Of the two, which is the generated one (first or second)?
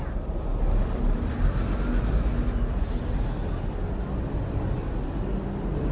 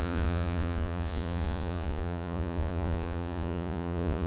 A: second